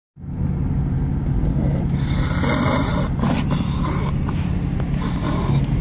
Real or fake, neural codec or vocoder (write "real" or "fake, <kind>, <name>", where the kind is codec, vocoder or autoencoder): real